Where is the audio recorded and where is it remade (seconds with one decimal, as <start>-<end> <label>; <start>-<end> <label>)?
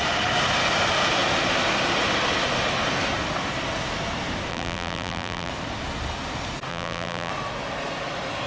0.0-4.5 recorded; 4.5-5.5 remade; 5.5-6.7 recorded; 6.7-7.3 remade; 7.3-8.5 recorded